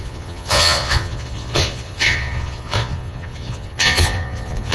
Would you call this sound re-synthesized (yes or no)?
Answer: yes